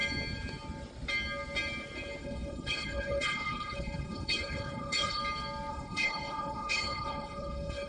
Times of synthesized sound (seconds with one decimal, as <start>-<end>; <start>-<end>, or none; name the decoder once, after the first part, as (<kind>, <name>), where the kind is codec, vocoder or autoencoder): 2.2-5.2 (codec, HILCodec); 5.7-7.9